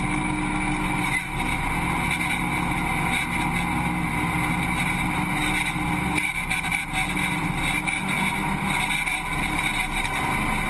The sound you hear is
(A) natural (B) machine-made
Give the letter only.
A